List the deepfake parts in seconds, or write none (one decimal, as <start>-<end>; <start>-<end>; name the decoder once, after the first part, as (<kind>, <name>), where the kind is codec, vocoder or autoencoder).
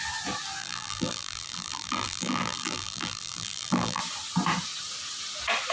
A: 0.6-4.0 (vocoder, BigVGAN v2)